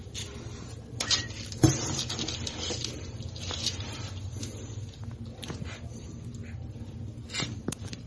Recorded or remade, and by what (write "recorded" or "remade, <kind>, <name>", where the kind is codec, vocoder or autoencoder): recorded